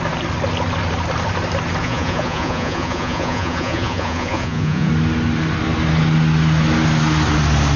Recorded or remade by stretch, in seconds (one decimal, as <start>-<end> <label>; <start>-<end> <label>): 0.0-1.8 recorded; 1.8-4.9 remade; 4.9-7.8 recorded